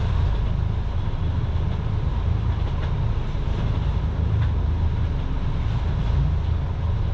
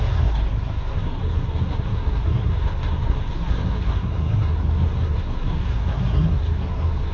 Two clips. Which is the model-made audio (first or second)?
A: second